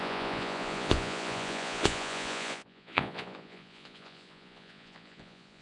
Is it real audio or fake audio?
fake